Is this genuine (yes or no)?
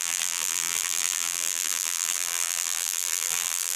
no